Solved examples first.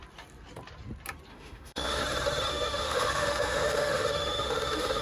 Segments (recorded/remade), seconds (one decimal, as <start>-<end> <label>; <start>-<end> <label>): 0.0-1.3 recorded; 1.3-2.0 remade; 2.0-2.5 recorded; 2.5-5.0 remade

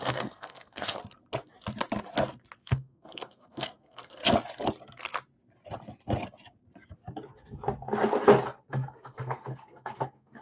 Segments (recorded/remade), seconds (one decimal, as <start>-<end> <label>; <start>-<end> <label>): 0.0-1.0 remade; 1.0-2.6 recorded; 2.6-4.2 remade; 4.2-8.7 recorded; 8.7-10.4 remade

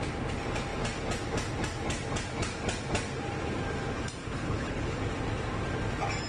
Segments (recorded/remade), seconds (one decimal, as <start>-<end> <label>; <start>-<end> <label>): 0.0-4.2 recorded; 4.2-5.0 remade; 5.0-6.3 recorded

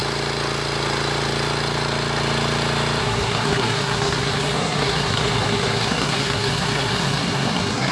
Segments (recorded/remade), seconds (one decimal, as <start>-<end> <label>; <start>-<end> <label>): 0.0-3.0 recorded; 3.0-7.9 remade

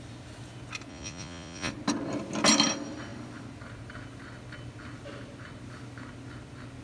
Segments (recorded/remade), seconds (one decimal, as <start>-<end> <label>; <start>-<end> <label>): 0.0-0.9 recorded; 0.9-1.7 remade; 1.7-6.8 recorded

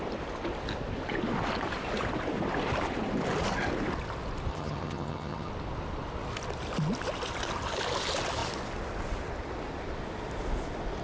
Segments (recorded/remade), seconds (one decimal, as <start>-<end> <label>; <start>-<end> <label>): 0.0-4.5 recorded; 4.5-5.5 remade; 5.5-11.0 recorded

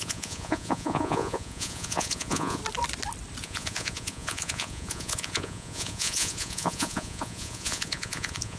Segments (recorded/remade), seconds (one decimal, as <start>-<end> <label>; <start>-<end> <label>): 0.0-2.6 remade; 2.6-3.4 recorded; 3.4-8.6 remade

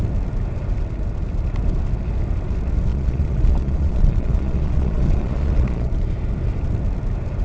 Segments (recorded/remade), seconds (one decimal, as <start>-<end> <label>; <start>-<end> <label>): 0.0-2.9 recorded; 2.9-5.9 remade; 5.9-7.4 recorded